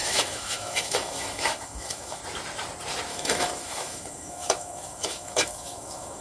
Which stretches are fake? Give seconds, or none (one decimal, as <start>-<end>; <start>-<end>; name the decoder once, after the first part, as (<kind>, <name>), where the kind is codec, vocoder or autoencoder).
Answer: 0.0-2.2 (autoencoder, DAC-VAE); 3.1-6.2